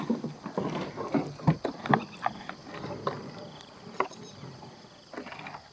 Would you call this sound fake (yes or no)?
no